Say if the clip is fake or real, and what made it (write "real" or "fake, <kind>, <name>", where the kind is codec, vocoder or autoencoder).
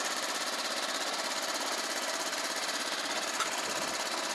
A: real